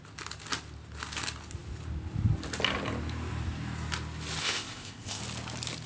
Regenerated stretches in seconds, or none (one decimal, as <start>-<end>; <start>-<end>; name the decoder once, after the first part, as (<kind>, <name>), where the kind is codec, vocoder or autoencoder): 4.4-5.2 (codec, ZipCodec)

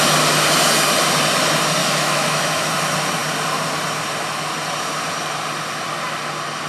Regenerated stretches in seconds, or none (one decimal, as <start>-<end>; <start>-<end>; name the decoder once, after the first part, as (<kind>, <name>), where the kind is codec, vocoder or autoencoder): 1.8-2.7 (autoencoder, DAC-VAE)

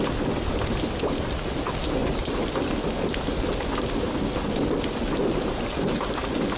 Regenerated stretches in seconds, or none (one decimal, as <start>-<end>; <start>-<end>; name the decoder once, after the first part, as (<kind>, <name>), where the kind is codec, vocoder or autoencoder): none

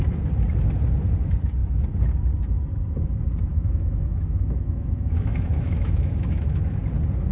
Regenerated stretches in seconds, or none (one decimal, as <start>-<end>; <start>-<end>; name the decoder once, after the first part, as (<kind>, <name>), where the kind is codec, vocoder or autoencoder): 3.5-6.8 (autoencoder, DAC-VAE)